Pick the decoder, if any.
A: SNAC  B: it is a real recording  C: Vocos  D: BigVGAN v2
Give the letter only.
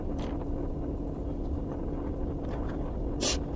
B